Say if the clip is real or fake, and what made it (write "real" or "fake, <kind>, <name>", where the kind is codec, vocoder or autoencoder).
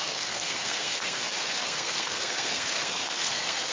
fake, codec, SNAC